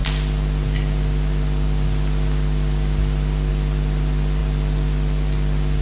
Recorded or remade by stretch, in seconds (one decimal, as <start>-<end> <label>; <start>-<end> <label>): 0.0-5.8 recorded